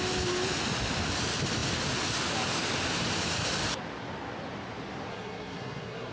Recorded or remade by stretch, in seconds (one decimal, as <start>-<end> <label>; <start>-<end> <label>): 0.0-5.1 recorded; 5.1-6.1 remade